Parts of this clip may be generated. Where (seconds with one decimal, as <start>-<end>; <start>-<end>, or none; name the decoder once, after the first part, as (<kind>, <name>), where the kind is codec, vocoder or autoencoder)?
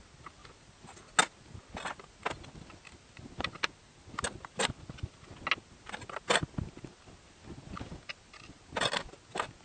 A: none